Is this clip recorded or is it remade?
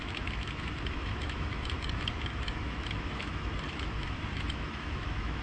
remade